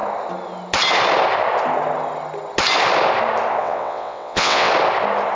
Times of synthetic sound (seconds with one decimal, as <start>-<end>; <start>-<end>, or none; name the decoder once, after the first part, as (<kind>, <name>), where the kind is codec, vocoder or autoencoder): 3.6-4.7 (vocoder, WaveNeXt)